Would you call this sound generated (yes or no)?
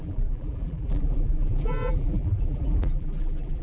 yes